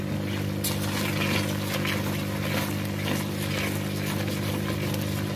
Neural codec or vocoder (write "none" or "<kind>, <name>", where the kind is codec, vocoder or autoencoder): none